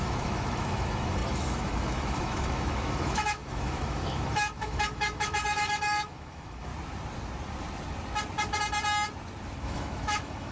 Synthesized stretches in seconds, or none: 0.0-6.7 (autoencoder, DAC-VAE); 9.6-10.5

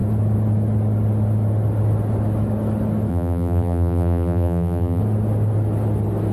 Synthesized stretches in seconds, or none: 3.1-5.0 (vocoder, BigVGAN v2)

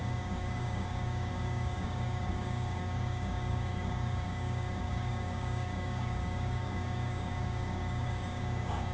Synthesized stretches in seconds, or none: 0.0-8.9 (codec, DAC)